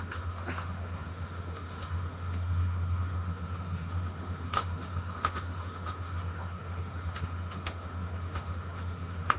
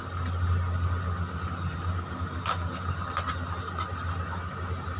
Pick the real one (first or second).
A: second